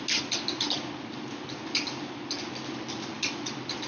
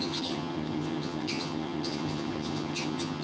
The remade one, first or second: second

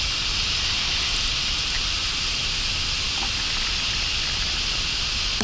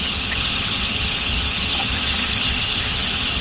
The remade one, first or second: second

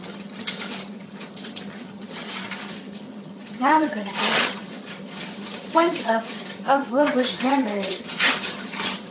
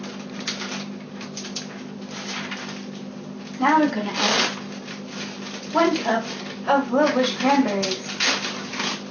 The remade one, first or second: first